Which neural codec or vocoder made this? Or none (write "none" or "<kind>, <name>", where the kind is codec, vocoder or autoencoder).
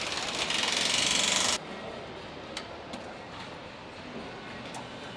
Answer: none